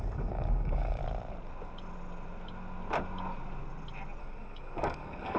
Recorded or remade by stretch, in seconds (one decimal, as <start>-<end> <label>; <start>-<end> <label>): 0.0-1.0 remade; 1.0-4.2 recorded; 4.2-5.4 remade